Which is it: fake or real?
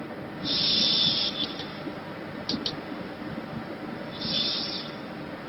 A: real